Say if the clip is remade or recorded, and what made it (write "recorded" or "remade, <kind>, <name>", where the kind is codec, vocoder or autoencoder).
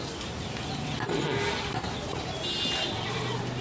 recorded